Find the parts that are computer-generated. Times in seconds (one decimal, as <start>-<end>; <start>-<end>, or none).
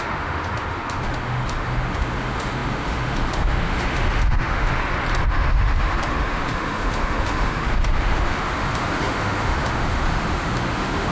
0.0-4.8; 5.3-11.1